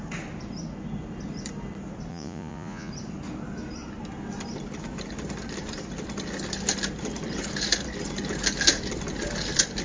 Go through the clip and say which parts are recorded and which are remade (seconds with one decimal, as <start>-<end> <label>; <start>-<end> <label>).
0.0-2.1 recorded; 2.1-2.9 remade; 2.9-9.8 recorded